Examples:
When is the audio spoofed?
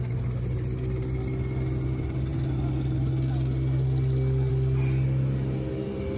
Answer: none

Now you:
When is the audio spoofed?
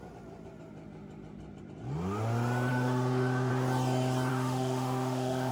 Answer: 2.7-3.5 (autoencoder, DAC-VAE); 4.3-5.5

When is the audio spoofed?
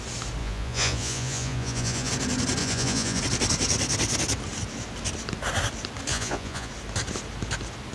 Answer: 0.4-2.1 (vocoder, Vocos); 2.6-3.2; 6.1-6.7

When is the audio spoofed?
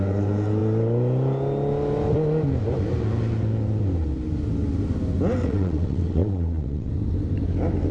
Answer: 5.4-6.9 (vocoder, WaveNeXt)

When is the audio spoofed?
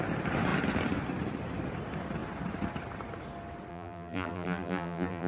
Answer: 3.7-5.3 (vocoder, BigVGAN v2)